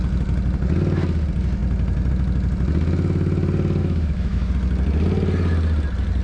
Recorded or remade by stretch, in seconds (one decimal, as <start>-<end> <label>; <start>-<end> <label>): 0.0-3.8 recorded; 3.8-4.5 remade; 4.5-6.2 recorded